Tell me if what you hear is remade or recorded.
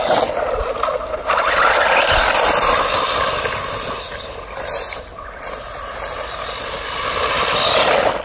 recorded